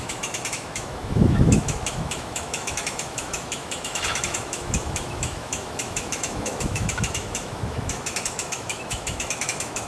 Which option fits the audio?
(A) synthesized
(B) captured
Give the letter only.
A